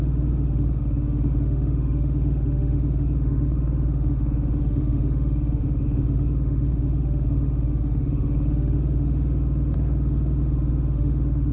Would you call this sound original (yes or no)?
no